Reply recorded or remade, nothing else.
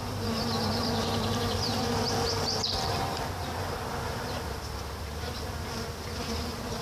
remade